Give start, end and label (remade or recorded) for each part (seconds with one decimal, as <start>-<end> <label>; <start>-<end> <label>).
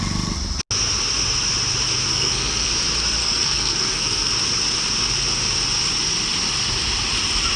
0.0-2.1 recorded; 2.1-2.7 remade; 2.7-3.2 recorded; 3.2-4.3 remade; 4.3-7.6 recorded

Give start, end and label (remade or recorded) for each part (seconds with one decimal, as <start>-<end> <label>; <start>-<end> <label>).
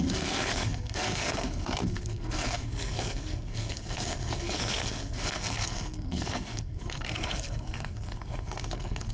0.0-9.1 remade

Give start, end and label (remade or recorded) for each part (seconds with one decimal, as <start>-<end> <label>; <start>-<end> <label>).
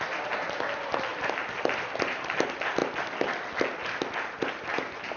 0.0-5.2 recorded